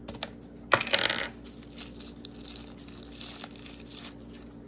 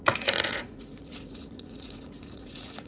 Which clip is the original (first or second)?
first